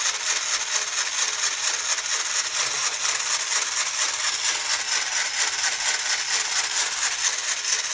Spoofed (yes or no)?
no